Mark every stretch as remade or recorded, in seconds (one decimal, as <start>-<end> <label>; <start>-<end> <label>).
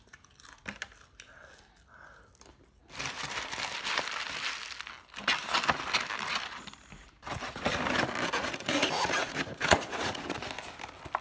0.0-8.4 recorded; 8.4-10.4 remade; 10.4-11.2 recorded